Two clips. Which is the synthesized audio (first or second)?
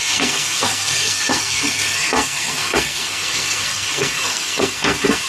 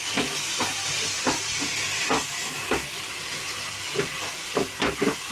first